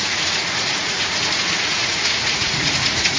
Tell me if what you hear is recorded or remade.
remade